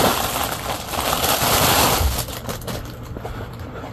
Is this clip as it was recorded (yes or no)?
yes